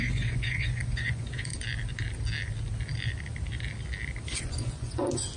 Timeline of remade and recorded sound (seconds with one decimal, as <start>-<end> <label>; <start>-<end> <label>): 0.0-1.5 remade; 1.5-4.4 recorded; 4.4-5.4 remade